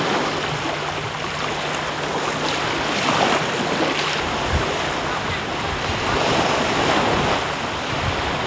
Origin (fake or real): real